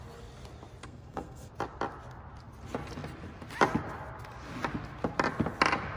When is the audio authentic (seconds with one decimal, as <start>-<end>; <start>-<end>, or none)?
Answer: 0.0-0.8; 1.5-6.0